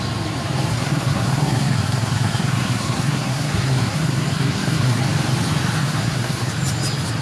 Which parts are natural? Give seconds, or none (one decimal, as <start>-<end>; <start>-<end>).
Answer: 0.0-0.7; 5.0-5.8; 6.5-7.2